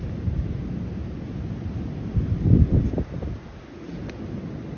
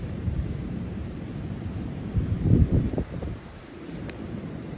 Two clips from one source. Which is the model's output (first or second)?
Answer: second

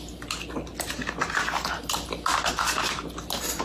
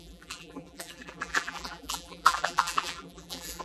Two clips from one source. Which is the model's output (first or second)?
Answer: second